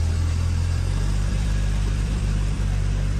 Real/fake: fake